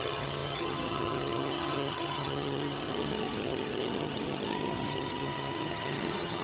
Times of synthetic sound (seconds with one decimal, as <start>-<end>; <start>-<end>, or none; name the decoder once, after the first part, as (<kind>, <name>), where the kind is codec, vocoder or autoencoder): 0.0-6.4 (vocoder, HiFi-GAN)